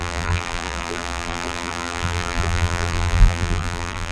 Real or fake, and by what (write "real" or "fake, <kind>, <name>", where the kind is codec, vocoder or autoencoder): fake, vocoder, BigVGAN v2